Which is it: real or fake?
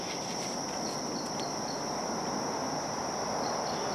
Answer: real